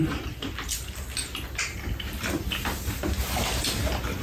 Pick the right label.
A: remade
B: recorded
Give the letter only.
B